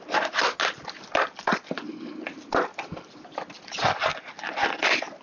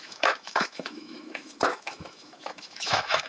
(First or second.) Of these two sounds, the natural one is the first